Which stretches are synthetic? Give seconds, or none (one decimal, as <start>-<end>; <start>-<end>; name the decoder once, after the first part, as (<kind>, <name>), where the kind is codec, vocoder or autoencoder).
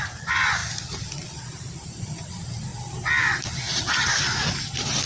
none